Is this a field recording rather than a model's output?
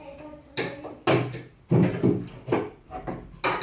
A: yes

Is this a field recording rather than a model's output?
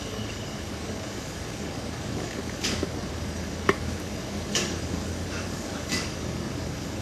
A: no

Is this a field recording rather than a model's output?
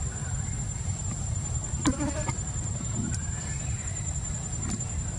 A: no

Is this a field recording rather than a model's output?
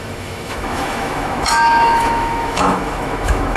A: no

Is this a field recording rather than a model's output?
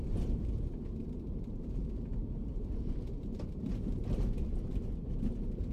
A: no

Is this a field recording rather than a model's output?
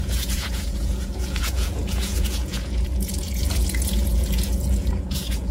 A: no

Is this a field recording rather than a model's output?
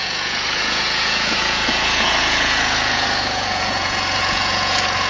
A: no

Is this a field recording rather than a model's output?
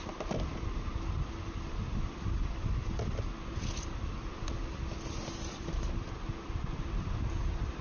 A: yes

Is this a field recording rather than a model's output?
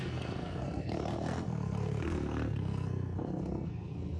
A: no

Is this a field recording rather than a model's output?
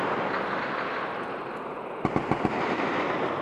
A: yes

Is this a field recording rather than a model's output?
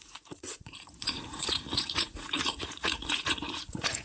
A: no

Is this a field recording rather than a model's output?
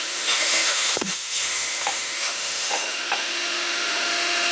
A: no